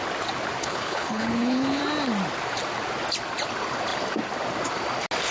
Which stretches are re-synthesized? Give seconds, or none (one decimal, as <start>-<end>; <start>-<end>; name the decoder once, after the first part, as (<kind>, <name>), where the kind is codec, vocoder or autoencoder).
0.6-1.8 (codec, HILCodec)

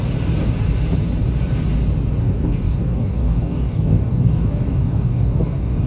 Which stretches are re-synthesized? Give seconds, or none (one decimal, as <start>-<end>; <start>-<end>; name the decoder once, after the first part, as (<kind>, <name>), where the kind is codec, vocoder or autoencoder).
2.2-5.9 (codec, DAC)

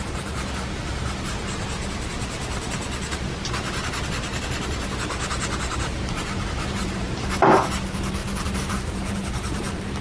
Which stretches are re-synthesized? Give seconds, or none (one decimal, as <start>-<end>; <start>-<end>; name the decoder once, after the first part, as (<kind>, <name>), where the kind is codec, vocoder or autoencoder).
0.0-1.3 (vocoder, BigVGAN v2); 5.7-8.2; 8.7-10.0

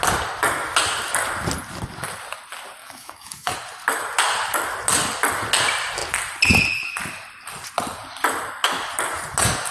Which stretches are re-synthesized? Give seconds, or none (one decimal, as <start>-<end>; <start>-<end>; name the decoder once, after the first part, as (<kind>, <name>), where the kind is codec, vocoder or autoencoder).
2.8-3.5 (autoencoder, DAC-VAE)